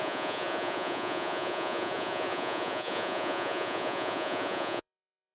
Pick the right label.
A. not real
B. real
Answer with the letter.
A